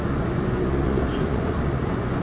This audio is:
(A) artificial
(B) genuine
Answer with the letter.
A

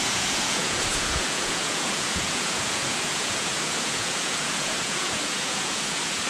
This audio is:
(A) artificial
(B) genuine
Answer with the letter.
A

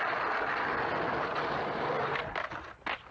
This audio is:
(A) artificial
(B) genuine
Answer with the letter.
B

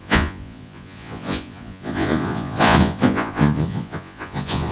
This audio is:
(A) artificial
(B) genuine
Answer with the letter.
A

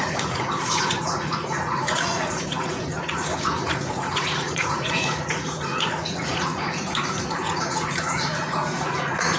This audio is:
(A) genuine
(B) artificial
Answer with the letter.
B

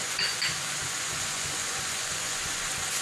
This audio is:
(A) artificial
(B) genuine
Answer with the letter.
A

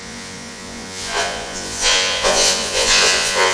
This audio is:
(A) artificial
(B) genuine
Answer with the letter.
A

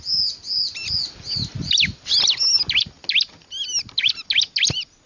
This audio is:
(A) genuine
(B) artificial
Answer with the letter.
A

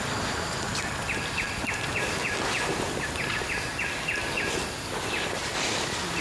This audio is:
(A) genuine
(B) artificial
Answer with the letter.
A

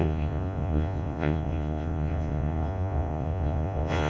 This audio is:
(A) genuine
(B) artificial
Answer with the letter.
B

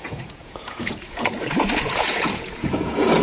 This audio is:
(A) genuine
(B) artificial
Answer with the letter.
B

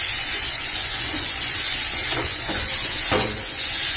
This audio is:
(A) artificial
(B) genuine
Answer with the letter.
A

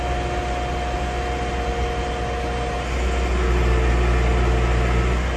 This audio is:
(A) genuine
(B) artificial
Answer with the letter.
A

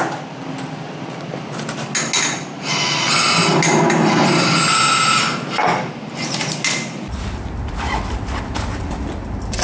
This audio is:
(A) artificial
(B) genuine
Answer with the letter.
B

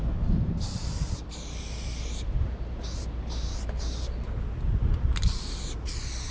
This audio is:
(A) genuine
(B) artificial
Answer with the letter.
A